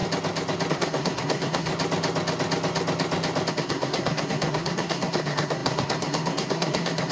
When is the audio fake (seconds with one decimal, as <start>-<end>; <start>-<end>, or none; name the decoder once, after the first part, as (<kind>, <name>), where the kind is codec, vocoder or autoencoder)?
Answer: 0.7-1.7 (codec, SNAC); 3.5-7.1